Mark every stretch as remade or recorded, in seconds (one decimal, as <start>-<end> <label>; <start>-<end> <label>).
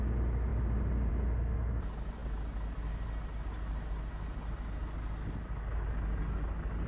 0.0-6.9 recorded